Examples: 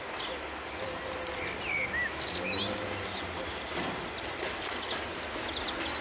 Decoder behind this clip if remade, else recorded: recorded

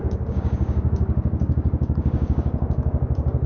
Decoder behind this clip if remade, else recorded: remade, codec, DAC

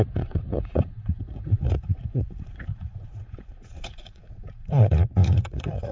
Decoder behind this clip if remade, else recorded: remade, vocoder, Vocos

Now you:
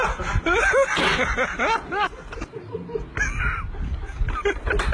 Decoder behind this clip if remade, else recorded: recorded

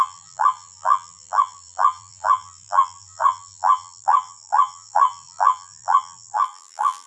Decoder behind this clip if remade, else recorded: remade, vocoder, BigVGAN v2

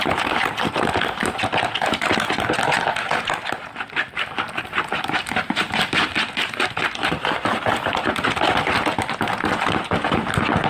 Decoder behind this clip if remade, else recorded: recorded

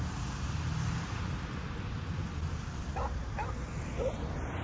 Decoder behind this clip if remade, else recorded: recorded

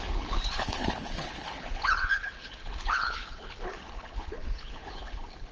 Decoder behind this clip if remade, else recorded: remade, codec, HILCodec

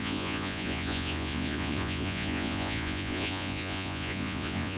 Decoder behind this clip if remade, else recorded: remade, vocoder, Vocos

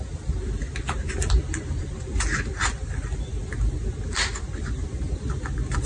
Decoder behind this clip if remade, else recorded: recorded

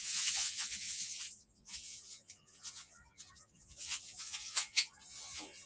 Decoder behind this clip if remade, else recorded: remade, vocoder, Vocos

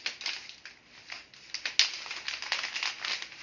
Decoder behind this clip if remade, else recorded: recorded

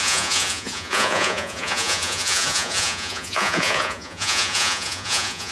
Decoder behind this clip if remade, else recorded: remade, vocoder, Vocos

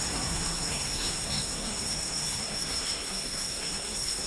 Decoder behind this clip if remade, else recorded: remade, codec, SNAC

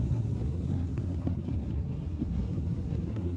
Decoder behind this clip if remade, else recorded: remade, codec, SNAC